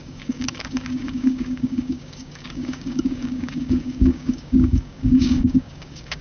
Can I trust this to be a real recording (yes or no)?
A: no